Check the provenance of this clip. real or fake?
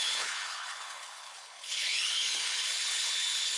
fake